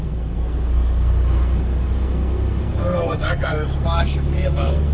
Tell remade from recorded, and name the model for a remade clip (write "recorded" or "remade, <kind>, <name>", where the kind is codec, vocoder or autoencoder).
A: remade, codec, SNAC